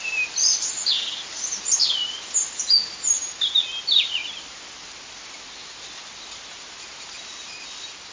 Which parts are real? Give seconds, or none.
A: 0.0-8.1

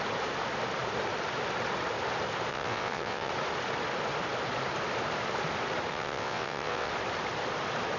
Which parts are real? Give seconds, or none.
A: 0.0-2.5; 3.3-5.9; 6.9-8.0

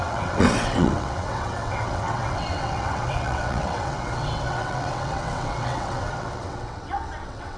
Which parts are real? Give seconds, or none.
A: none

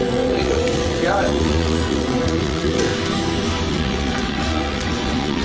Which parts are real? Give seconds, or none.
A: 2.9-3.7